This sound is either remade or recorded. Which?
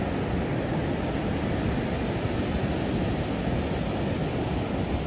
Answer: recorded